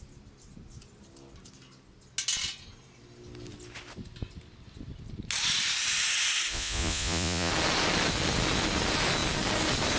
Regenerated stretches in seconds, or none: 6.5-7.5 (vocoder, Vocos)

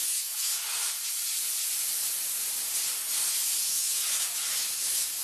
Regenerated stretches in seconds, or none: 0.0-0.5 (autoencoder, DAC-VAE); 3.6-5.2

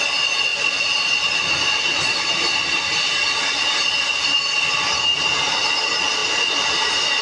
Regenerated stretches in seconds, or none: none

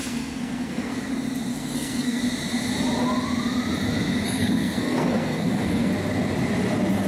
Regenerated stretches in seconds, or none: 0.0-1.1 (codec, SNAC); 1.5-2.2; 4.1-5.9

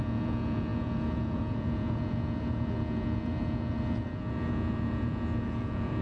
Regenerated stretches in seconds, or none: 0.0-6.0 (vocoder, Vocos)